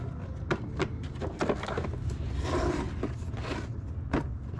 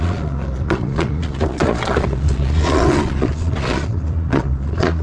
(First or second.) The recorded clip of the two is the first